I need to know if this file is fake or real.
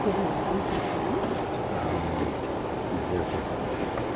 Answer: real